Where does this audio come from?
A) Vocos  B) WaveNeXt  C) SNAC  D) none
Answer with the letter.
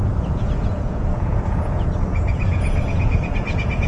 A